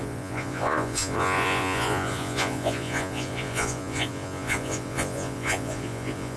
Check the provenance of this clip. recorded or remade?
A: remade